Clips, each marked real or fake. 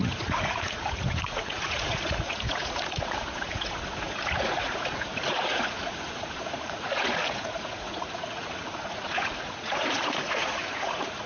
fake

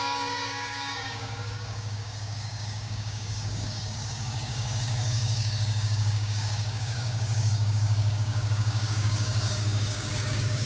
fake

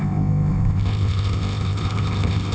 fake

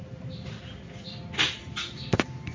real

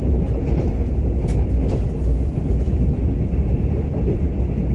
real